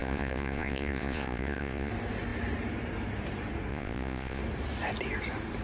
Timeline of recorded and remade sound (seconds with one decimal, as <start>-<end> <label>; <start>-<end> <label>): 0.0-1.9 remade; 1.9-3.7 recorded; 3.7-4.4 remade; 4.4-5.6 recorded